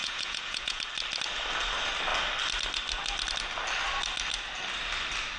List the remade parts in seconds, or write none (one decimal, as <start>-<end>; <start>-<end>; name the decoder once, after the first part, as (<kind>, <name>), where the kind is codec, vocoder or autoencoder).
0.0-0.8 (vocoder, Vocos)